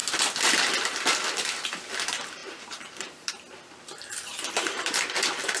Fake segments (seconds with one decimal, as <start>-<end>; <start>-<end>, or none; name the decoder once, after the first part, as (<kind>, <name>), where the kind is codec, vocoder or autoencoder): 2.4-3.3 (vocoder, BigVGAN v2); 4.3-5.0